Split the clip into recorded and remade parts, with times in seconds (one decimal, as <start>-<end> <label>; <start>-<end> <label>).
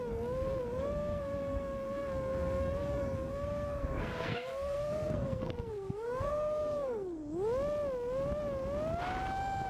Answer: 0.0-7.2 remade; 7.2-9.7 recorded